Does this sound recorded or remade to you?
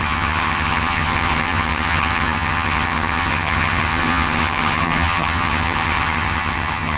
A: remade